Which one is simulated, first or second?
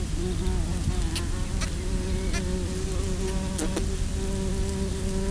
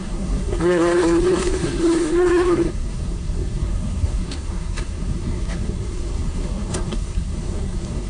second